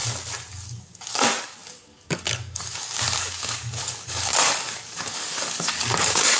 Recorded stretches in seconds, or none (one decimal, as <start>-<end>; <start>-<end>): 0.0-0.5